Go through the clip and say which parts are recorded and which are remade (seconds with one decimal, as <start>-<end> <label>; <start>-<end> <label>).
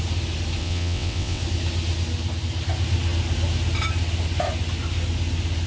0.0-0.6 recorded; 0.6-1.4 remade; 1.4-5.7 recorded